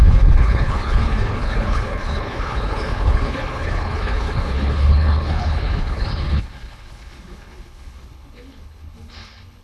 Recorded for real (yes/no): no